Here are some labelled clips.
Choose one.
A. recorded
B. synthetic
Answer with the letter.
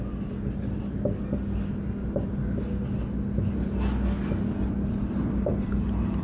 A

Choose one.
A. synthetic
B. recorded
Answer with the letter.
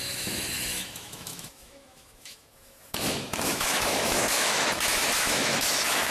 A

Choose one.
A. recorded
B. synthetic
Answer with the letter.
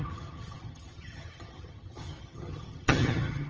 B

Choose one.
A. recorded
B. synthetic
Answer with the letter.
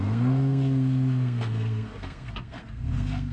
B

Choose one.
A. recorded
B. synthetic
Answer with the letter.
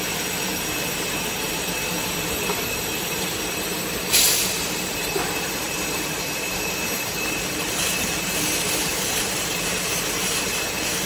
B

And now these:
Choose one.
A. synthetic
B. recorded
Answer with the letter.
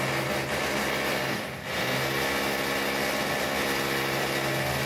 B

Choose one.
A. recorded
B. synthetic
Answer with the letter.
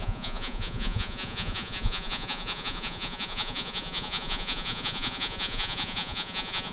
B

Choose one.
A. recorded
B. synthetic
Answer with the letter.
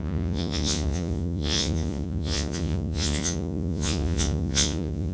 B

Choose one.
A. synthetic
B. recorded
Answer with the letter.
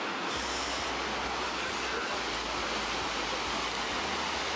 B